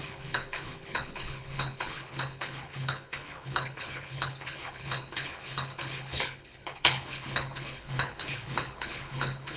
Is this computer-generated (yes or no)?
yes